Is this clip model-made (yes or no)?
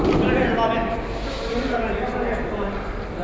no